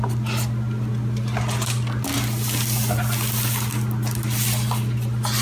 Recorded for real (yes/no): yes